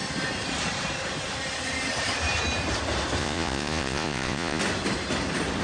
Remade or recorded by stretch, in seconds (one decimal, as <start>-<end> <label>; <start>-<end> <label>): 0.0-3.2 recorded; 3.2-4.6 remade; 4.6-5.6 recorded